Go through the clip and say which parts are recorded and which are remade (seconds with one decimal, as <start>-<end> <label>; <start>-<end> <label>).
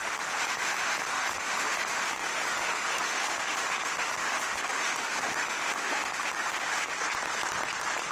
0.0-6.9 remade; 6.9-8.1 recorded